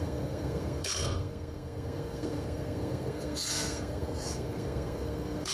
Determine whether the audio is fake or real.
fake